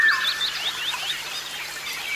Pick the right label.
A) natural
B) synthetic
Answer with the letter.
A